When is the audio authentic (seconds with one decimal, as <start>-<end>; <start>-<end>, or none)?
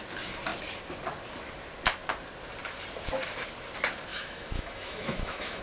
0.0-4.1